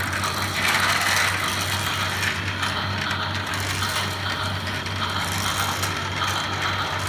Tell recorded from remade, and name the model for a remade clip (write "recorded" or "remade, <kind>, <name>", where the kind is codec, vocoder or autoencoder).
recorded